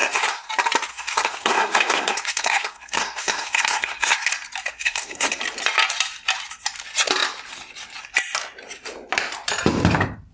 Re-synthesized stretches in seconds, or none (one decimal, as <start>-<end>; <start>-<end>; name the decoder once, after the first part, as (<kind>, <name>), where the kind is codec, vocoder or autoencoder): 0.0-0.5 (codec, SNAC); 0.9-4.3; 4.7-5.4